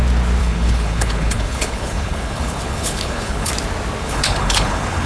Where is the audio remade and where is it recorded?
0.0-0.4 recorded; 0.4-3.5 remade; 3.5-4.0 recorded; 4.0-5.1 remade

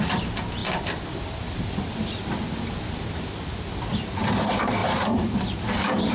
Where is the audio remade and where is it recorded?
0.0-4.8 recorded; 4.8-6.1 remade

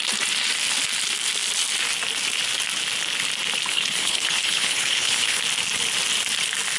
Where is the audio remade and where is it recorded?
0.0-3.7 recorded; 3.7-5.4 remade; 5.4-6.8 recorded

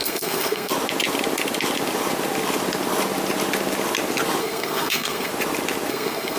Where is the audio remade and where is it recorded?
0.0-0.7 remade; 0.7-4.4 recorded; 4.4-5.3 remade; 5.3-5.9 recorded; 5.9-6.4 remade